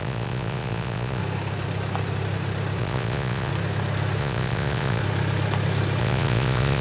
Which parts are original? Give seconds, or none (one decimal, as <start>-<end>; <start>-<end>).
1.2-2.8; 3.5-4.2; 5.0-6.0